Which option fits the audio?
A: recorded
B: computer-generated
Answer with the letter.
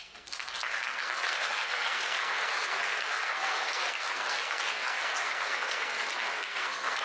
B